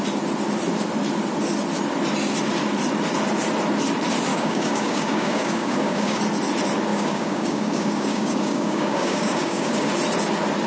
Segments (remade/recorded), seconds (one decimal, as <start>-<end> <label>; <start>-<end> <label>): 0.0-4.3 recorded; 4.3-6.2 remade; 6.2-6.9 recorded; 6.9-9.9 remade; 9.9-10.7 recorded